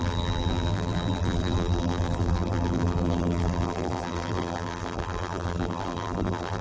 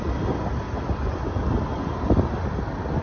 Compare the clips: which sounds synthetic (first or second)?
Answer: first